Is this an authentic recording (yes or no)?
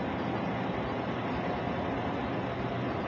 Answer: yes